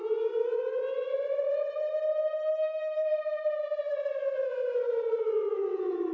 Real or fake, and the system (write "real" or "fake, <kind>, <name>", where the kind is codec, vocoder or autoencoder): real